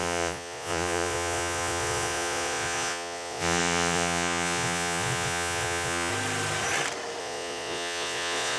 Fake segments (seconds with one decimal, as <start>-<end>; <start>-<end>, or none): 0.0-6.1; 7.2-8.6